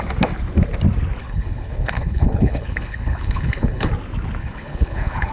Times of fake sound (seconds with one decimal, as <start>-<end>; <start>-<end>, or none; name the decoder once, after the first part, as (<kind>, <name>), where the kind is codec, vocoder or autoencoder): 1.2-3.9 (codec, HILCodec); 4.4-5.3